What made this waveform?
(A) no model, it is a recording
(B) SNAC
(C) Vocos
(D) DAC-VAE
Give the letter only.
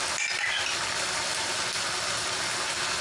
A